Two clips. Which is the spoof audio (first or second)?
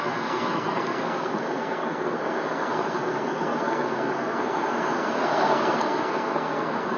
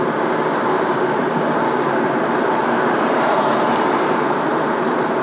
first